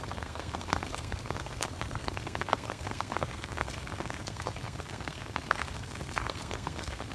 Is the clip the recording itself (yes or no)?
no